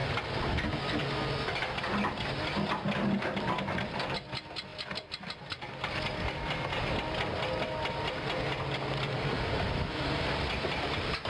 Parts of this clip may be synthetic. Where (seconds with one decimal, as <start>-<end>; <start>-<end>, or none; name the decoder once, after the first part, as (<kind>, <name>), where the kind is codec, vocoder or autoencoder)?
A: none